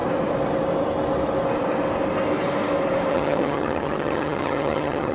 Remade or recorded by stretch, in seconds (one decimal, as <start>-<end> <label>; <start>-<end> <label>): 0.0-3.1 recorded; 3.1-5.1 remade